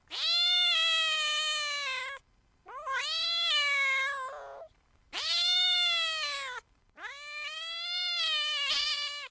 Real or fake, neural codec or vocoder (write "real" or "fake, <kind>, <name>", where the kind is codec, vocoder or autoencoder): real